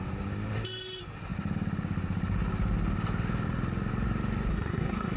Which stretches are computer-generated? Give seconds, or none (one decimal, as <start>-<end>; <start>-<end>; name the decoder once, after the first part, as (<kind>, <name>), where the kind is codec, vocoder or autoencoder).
4.5-5.2 (codec, SNAC)